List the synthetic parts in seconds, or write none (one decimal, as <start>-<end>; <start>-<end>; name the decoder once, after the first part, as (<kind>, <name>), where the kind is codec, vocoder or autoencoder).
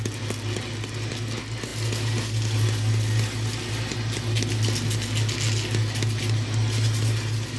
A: none